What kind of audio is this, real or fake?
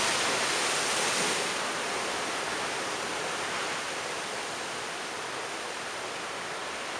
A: real